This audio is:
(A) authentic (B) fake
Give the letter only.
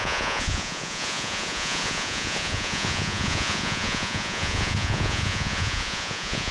B